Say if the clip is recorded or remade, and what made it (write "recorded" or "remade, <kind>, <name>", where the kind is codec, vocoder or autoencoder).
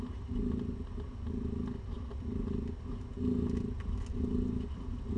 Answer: recorded